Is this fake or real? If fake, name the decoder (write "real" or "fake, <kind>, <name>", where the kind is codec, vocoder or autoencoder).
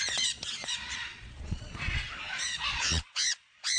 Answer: fake, vocoder, Vocos